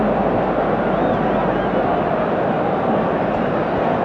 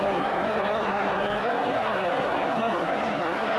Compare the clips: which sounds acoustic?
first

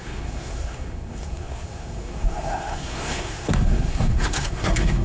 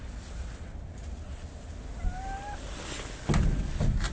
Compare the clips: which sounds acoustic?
second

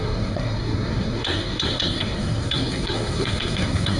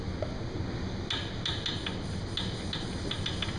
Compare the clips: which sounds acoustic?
second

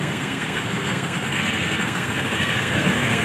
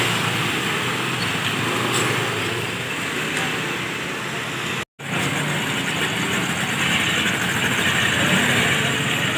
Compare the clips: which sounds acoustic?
second